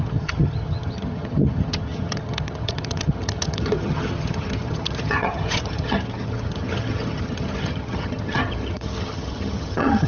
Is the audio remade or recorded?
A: remade